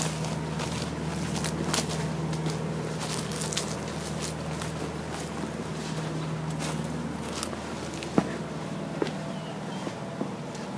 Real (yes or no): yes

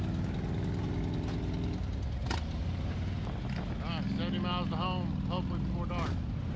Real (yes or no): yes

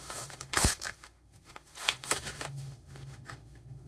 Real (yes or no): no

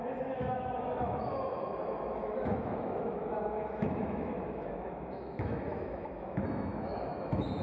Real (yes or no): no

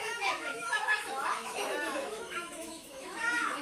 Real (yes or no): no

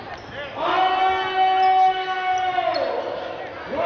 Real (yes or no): yes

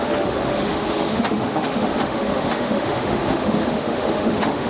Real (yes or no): no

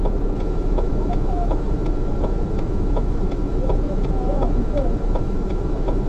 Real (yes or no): no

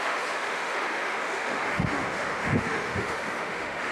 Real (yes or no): no